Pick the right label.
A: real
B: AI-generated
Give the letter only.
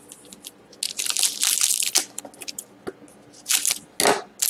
A